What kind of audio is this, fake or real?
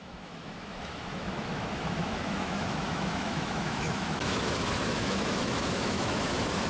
fake